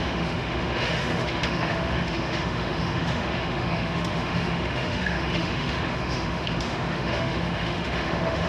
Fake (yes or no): yes